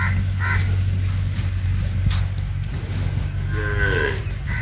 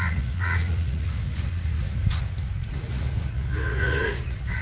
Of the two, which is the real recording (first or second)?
first